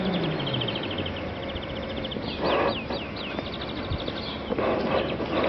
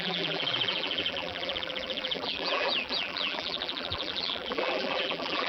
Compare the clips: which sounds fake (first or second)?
second